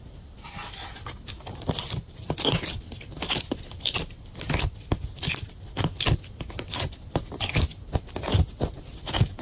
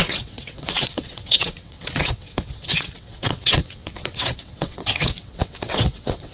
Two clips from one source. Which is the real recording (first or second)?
first